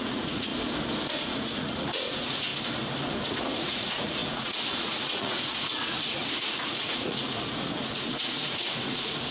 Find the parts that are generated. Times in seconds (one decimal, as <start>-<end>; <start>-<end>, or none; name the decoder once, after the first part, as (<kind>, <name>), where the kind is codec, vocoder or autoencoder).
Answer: 0.0-0.5 (vocoder, Vocos); 1.1-2.5; 3.2-9.3